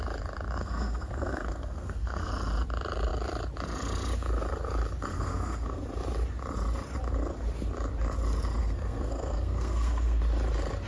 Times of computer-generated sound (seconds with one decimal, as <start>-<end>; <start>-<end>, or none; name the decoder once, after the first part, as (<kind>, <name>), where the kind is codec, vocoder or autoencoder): 0.6-2.3 (codec, SNAC); 5.1-5.8; 8.6-10.2